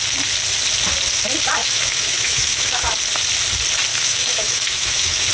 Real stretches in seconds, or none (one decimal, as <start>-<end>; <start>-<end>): 0.0-1.6; 2.9-3.9